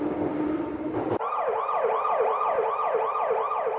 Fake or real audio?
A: real